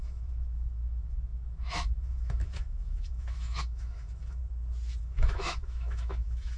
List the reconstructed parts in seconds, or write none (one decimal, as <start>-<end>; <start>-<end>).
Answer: 0.0-4.4; 5.0-6.6